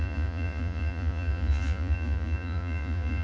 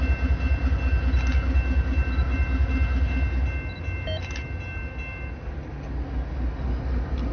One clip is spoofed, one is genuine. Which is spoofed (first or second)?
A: first